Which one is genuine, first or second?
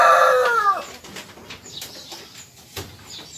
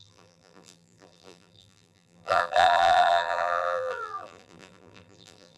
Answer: first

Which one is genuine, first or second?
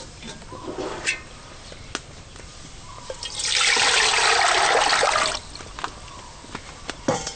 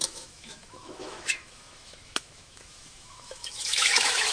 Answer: first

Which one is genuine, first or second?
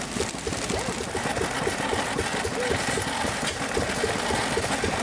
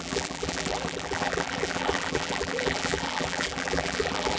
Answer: first